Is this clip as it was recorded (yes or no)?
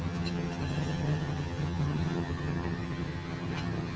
no